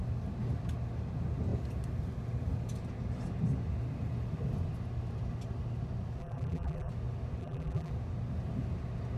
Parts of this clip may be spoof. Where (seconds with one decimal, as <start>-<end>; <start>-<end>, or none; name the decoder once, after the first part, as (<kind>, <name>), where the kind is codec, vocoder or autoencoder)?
6.2-6.9 (vocoder, BigVGAN v2); 7.4-7.9